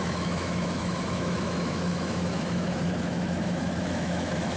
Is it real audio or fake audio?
fake